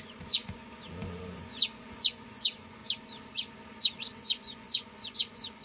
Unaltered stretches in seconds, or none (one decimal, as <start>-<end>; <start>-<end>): 2.8-3.8